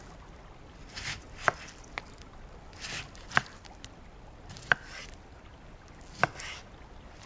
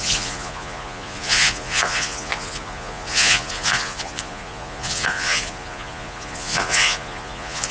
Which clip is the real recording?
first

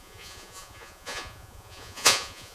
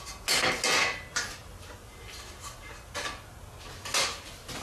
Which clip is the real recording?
second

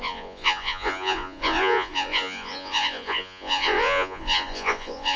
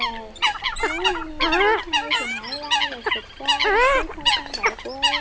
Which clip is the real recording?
second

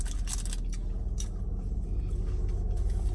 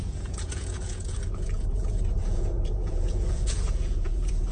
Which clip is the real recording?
first